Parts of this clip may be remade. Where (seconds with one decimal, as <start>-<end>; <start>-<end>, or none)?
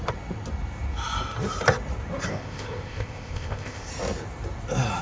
2.3-3.9